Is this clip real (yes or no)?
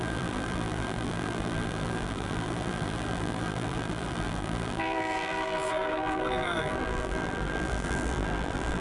no